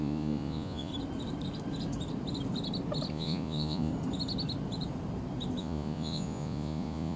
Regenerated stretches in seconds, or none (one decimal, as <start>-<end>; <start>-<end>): 0.0-0.9; 3.1-3.9; 5.6-7.2